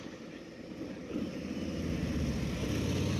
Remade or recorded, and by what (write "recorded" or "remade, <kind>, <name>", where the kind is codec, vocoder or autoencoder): recorded